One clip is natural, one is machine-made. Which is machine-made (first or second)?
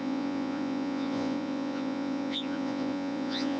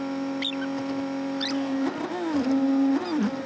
first